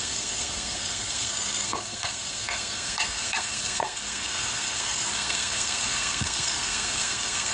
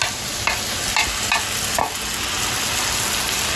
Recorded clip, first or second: second